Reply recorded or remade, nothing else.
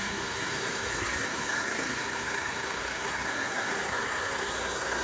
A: remade